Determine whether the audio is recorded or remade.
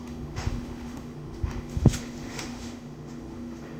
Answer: remade